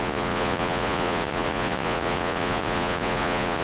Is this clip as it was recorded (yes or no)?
no